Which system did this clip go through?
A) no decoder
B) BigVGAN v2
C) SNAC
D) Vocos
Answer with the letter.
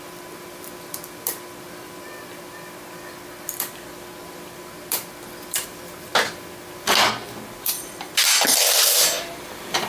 A